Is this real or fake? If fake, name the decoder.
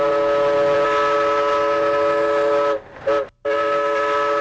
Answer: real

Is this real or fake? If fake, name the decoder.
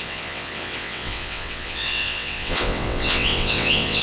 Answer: fake, vocoder, WaveNeXt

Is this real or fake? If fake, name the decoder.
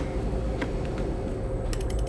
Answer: real